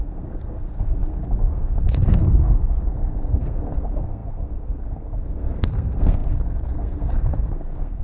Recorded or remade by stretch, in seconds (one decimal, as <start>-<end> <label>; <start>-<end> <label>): 0.0-8.0 remade